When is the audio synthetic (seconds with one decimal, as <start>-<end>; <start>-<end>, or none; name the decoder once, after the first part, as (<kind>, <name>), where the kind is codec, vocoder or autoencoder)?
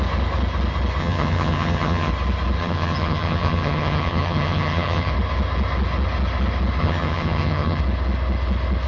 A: 1.0-2.1 (vocoder, HiFi-GAN); 2.6-5.1; 6.8-7.8